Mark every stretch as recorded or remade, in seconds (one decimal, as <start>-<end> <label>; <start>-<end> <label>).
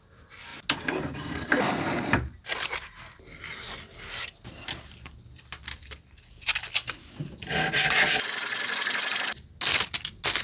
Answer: 0.0-10.4 recorded